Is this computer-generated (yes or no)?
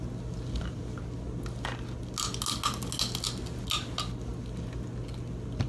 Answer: no